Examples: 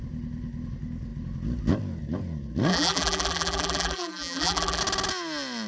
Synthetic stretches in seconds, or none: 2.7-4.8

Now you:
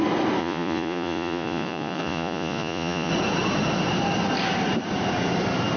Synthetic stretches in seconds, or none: 0.4-3.1

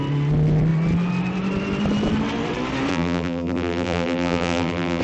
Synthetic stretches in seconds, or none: 2.9-5.0

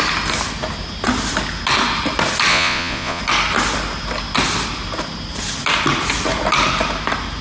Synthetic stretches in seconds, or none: 2.5-3.2

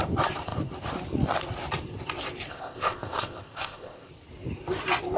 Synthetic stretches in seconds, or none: 2.5-4.1

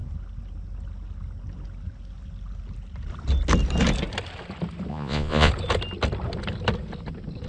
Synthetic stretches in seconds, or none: 4.9-5.5

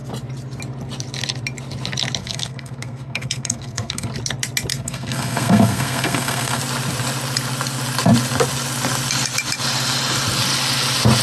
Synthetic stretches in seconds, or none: 2.2-4.1; 4.7-6.6

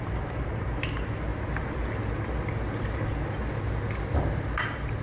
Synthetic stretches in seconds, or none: 0.0-1.3; 4.2-5.0